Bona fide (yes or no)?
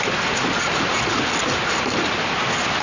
yes